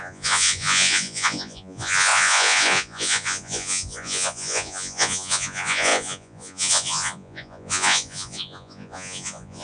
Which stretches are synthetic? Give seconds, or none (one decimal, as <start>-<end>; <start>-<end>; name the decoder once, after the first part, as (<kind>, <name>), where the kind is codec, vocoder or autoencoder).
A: 0.0-9.6 (vocoder, Vocos)